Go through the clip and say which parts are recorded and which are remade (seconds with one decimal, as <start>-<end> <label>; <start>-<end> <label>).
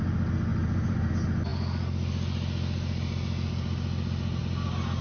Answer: 0.0-0.5 recorded; 0.5-1.1 remade; 1.1-5.0 recorded